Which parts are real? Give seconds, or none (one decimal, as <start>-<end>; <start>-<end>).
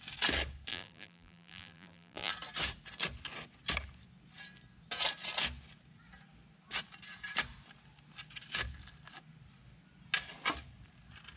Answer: 0.0-0.7; 2.3-11.4